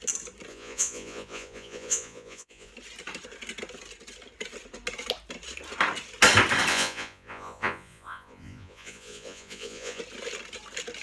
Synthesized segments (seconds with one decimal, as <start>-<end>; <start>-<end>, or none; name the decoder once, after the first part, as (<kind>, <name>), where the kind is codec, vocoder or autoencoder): 0.5-2.7 (vocoder, Vocos); 6.7-10.0